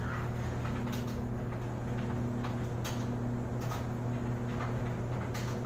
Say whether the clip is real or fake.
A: real